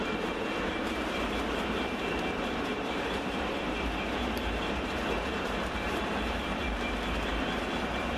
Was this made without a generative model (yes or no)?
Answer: no